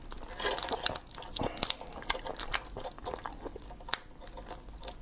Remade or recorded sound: recorded